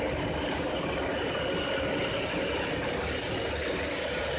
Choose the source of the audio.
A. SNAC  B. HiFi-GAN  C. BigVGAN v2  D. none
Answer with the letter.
D